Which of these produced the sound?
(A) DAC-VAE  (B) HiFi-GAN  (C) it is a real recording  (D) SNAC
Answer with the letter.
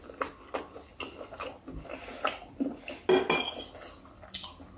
C